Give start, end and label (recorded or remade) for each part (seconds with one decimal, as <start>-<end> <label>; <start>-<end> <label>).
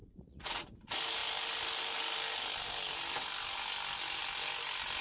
0.0-0.7 remade; 0.7-5.0 recorded